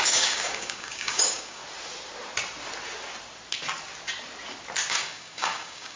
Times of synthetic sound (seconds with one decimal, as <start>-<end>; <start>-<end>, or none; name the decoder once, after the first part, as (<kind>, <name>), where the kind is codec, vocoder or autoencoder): 0.0-1.6 (codec, DAC); 4.9-6.0